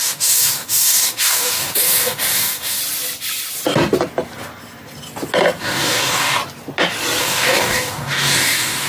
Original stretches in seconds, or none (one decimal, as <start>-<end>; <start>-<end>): 2.8-5.6; 6.4-7.2